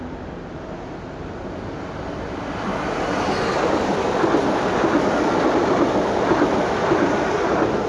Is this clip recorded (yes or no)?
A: yes